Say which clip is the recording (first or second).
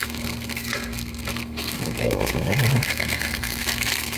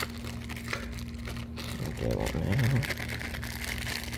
second